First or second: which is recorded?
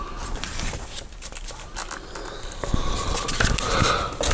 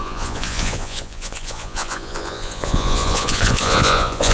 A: first